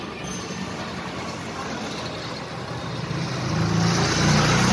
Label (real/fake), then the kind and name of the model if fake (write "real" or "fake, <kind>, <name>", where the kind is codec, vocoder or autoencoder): real